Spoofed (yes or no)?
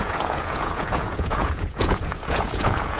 yes